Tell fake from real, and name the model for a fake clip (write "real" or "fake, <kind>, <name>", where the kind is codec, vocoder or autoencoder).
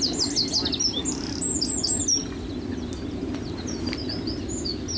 real